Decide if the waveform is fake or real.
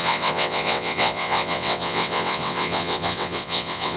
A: fake